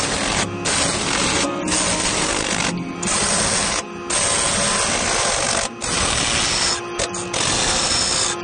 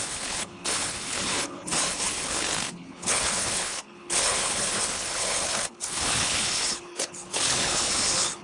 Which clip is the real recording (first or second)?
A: first